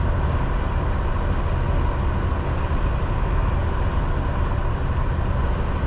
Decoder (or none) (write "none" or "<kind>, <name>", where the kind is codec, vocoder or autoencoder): none